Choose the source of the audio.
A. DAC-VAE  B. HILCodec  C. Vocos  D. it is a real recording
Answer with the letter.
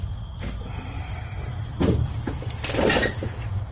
D